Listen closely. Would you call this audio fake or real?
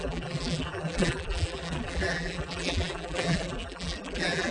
fake